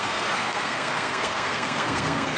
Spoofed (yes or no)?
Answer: yes